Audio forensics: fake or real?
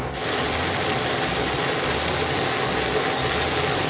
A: real